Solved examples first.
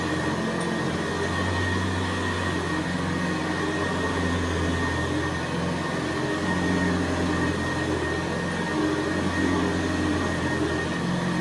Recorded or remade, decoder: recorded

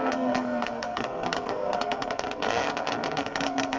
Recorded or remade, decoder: remade, codec, SNAC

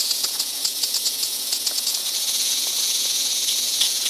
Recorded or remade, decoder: remade, vocoder, Vocos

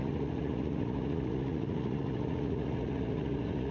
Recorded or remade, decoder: remade, vocoder, Vocos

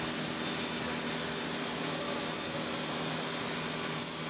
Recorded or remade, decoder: recorded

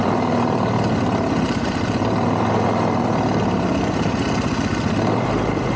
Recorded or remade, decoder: remade, vocoder, BigVGAN v2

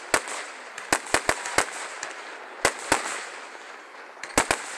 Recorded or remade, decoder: recorded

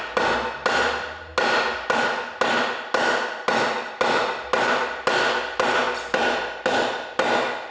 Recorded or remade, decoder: recorded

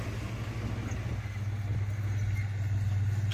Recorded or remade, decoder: recorded